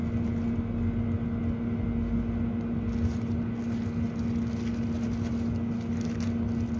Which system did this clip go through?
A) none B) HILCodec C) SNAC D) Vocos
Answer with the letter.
A